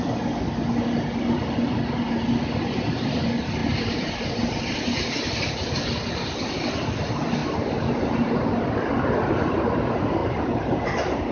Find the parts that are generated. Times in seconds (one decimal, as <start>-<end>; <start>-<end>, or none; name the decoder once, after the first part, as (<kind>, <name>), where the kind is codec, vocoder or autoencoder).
3.6-5.6 (vocoder, BigVGAN v2); 7.4-8.5; 10.2-11.3